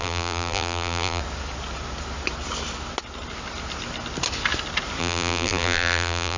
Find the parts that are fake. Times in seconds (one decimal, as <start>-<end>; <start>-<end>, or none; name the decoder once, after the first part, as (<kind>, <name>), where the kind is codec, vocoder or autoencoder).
0.0-1.2 (vocoder, BigVGAN v2); 5.0-6.4